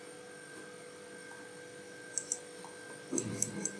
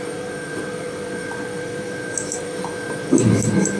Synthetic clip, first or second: second